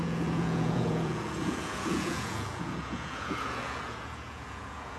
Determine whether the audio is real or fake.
fake